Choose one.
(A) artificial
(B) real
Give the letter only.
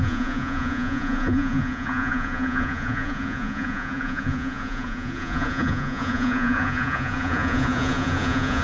A